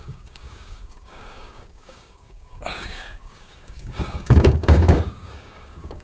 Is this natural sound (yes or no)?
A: no